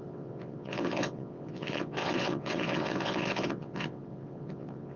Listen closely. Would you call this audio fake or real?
fake